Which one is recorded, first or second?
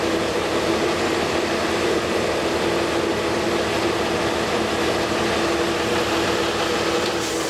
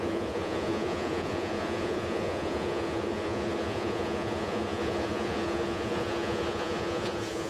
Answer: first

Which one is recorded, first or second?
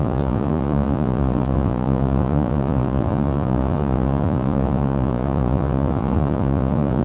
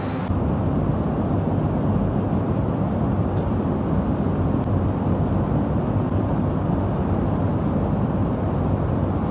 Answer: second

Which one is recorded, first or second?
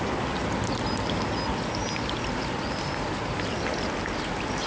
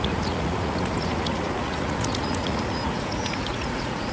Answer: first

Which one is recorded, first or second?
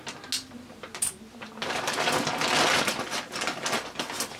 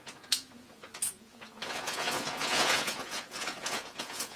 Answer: first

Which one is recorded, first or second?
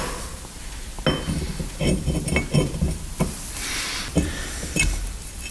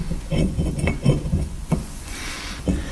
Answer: first